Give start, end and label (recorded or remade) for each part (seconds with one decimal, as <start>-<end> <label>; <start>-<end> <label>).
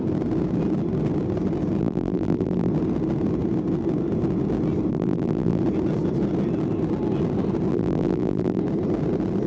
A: 0.0-1.8 recorded; 1.8-2.7 remade; 2.7-4.9 recorded; 4.9-5.6 remade; 5.6-7.7 recorded; 7.7-8.6 remade; 8.6-9.5 recorded